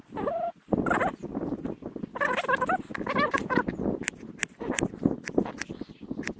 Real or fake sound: real